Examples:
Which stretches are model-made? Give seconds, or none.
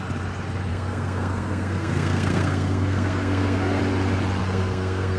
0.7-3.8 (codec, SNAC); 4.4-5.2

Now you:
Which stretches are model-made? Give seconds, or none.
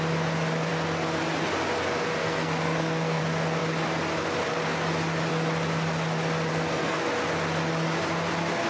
2.2-3.2 (codec, SNAC); 6.5-7.0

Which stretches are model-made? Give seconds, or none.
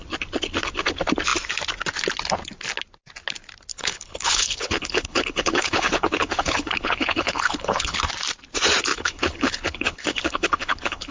3.7-8.1 (codec, HILCodec); 8.9-11.1